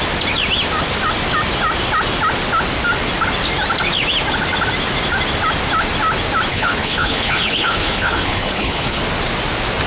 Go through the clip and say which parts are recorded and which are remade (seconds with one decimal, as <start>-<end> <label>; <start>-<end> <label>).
0.0-6.5 recorded; 6.5-9.0 remade; 9.0-9.9 recorded